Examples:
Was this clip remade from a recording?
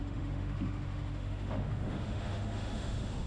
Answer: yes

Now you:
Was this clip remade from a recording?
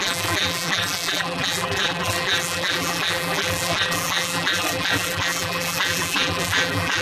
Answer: yes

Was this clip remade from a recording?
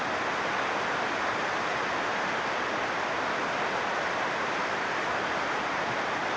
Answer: no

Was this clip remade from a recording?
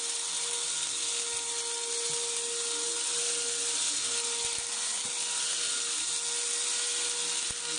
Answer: no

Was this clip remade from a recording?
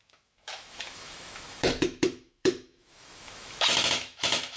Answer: yes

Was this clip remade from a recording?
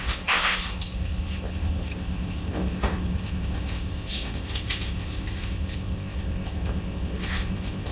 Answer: yes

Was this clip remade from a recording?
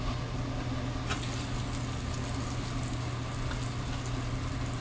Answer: no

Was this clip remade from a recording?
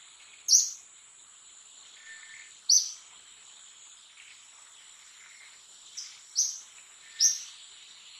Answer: no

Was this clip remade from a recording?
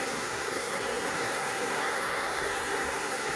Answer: yes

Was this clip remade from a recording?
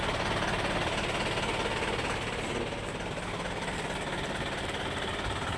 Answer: no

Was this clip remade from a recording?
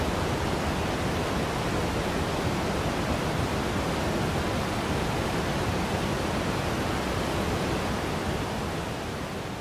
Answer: no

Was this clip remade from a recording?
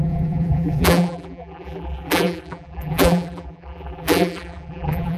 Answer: yes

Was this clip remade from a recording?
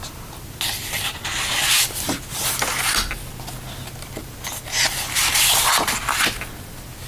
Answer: no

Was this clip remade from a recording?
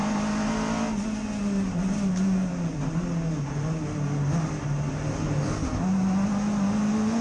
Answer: no